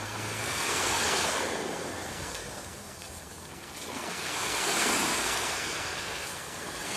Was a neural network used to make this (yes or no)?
yes